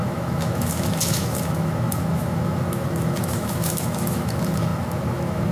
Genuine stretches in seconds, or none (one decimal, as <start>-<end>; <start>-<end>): none